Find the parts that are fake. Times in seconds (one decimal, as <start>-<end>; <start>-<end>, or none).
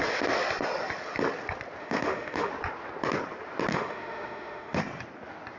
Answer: 1.8-2.5; 3.7-4.8